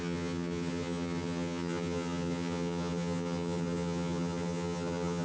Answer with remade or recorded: remade